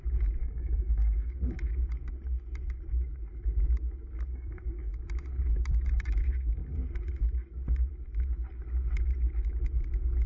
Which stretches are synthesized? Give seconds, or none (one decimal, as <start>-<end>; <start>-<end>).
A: 0.4-1.3; 4.3-4.9